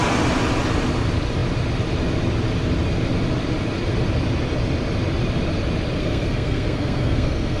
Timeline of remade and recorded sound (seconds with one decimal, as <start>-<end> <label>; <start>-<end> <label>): 0.0-6.0 recorded; 6.0-7.6 remade